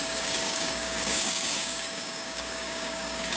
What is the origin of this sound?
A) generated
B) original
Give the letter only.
A